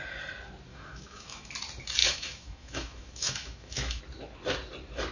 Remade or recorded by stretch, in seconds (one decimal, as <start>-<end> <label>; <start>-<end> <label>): 0.0-0.7 recorded; 0.7-1.5 remade; 1.5-2.0 recorded; 2.0-4.0 remade; 4.0-5.1 recorded